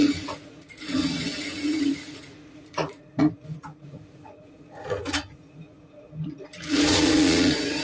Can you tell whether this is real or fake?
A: fake